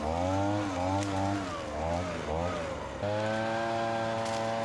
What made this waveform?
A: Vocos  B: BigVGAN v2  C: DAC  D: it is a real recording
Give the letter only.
D